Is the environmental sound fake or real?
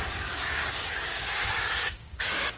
fake